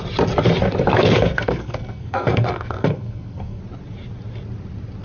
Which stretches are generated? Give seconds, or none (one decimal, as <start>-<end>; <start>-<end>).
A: 0.9-3.6